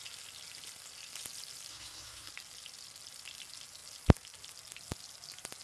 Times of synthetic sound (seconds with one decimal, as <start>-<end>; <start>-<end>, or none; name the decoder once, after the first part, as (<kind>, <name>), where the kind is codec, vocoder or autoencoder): 1.7-2.3 (codec, SNAC)

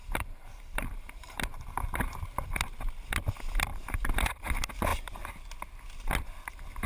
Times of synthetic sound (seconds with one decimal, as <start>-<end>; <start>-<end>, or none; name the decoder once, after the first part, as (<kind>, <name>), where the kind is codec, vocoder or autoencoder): 0.0-2.4 (vocoder, BigVGAN v2); 3.7-4.5

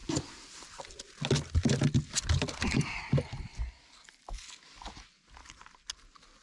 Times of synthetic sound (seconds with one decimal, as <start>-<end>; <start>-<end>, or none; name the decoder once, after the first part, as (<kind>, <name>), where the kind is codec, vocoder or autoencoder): 0.0-0.8 (vocoder, BigVGAN v2)

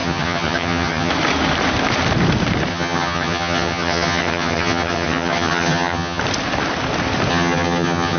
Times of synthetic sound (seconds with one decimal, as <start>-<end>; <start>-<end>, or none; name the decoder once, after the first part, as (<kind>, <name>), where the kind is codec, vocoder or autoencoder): 0.0-1.1 (vocoder, HiFi-GAN); 2.7-6.2; 7.3-8.2

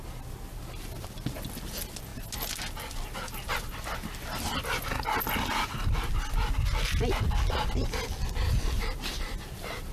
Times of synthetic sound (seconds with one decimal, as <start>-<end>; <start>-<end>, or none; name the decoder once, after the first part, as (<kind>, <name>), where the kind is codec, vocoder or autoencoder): none

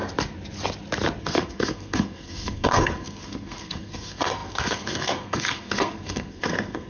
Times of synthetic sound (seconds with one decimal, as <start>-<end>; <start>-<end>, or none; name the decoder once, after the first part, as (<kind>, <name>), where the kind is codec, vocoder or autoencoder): 1.2-6.9 (codec, SNAC)